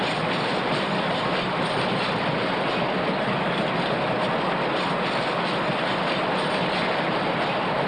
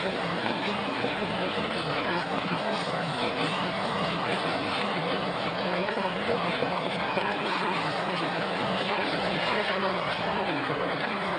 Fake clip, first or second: second